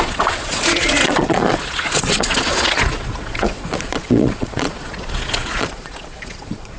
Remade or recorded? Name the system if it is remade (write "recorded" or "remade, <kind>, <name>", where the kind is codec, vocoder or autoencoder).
remade, vocoder, Vocos